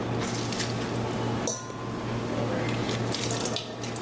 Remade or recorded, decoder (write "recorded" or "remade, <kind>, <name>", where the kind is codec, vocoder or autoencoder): recorded